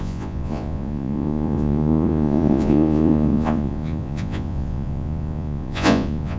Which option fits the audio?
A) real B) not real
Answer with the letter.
B